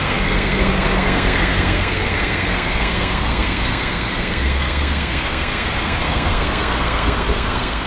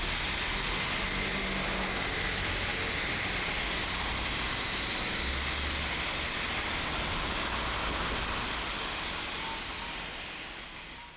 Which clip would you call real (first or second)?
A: second